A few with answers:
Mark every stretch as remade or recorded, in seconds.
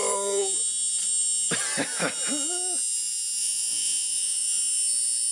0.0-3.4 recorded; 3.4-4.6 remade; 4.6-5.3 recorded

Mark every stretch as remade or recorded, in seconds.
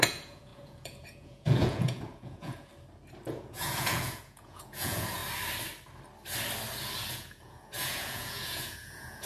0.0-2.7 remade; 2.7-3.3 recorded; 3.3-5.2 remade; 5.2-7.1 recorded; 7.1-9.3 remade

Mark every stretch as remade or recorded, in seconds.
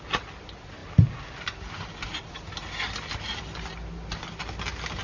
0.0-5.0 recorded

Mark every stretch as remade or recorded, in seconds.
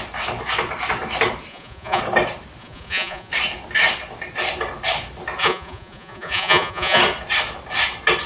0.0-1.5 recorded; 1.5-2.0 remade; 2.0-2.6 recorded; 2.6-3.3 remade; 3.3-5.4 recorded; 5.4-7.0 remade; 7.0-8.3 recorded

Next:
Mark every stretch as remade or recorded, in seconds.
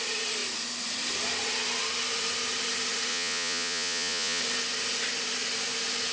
0.0-3.1 recorded; 3.1-4.4 remade; 4.4-6.1 recorded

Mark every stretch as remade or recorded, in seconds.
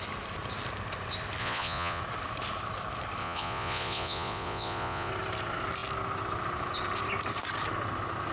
0.0-1.4 recorded; 1.4-2.0 remade; 2.0-3.2 recorded; 3.2-5.1 remade; 5.1-8.3 recorded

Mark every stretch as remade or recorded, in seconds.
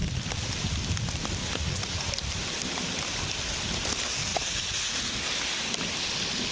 0.0-1.4 recorded; 1.4-2.1 remade; 2.1-4.3 recorded; 4.3-5.0 remade; 5.0-6.5 recorded